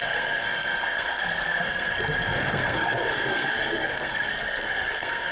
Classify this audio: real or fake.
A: fake